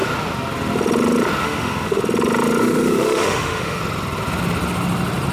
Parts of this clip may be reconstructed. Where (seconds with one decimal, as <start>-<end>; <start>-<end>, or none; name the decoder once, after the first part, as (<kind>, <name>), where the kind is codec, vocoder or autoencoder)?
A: 1.4-2.0 (autoencoder, DAC-VAE); 2.6-3.8